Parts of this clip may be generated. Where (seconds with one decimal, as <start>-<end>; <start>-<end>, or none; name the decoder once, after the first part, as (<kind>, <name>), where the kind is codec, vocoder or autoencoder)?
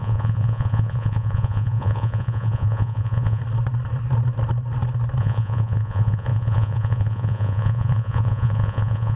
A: 0.0-3.4 (vocoder, Vocos); 5.2-9.2